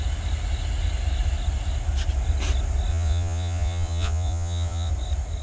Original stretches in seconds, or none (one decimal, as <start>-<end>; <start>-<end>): 0.0-2.9; 4.9-5.4